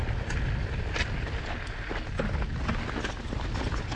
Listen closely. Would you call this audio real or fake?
real